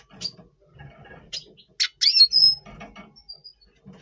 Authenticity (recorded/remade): recorded